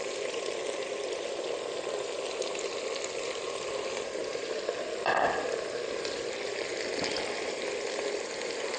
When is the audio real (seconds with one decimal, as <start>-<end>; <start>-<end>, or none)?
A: 0.0-8.8